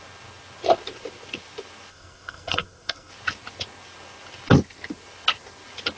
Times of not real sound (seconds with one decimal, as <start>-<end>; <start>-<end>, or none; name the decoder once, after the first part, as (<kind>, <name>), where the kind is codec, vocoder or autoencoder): 1.9-3.1 (codec, SNAC)